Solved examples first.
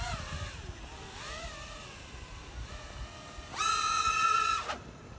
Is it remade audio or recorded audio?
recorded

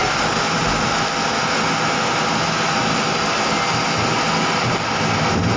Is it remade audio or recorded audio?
recorded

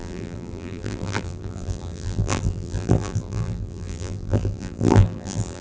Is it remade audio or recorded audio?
remade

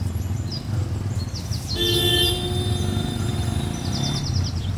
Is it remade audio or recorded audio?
recorded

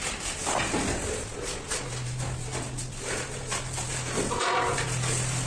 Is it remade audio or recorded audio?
recorded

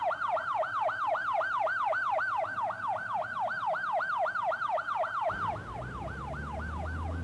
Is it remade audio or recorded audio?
recorded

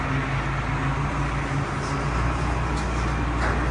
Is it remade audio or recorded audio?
recorded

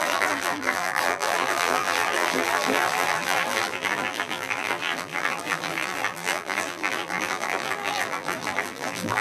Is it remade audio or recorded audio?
remade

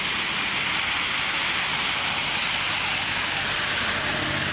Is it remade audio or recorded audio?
recorded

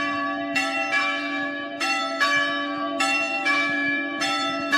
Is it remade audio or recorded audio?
remade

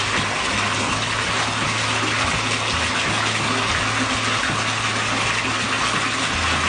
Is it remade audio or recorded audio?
recorded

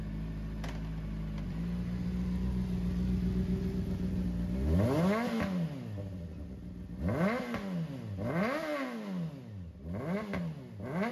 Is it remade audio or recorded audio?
recorded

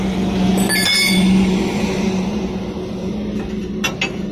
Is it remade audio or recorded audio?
recorded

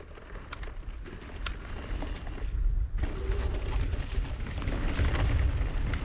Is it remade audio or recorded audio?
recorded